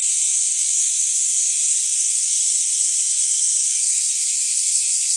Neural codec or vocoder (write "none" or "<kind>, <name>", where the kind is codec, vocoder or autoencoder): codec, SNAC